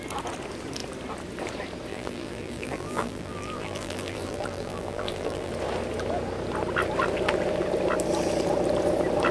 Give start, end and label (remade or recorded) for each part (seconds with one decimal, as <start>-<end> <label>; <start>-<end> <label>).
0.0-1.9 recorded; 1.9-5.5 remade; 5.5-9.3 recorded

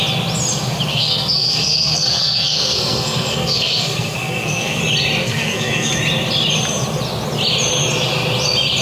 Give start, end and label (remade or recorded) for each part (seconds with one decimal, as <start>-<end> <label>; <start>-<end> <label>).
0.0-0.9 recorded; 0.9-4.8 remade; 4.8-5.2 recorded; 5.2-5.9 remade; 5.9-8.8 recorded